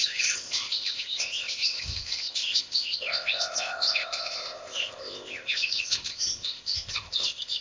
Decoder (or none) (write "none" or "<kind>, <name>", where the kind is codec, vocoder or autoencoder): codec, ZipCodec